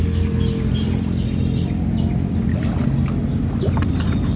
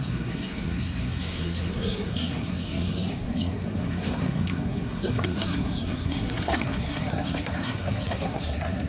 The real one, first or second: first